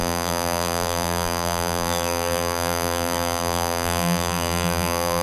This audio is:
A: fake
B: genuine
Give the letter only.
A